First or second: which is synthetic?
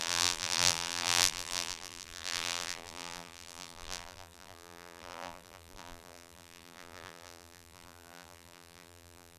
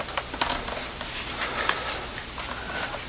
first